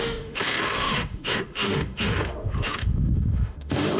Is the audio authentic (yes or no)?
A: no